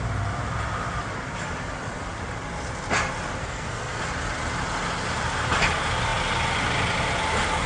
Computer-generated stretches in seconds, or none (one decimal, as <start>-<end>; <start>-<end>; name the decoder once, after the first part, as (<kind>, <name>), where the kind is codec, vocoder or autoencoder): 3.4-4.0 (codec, SNAC)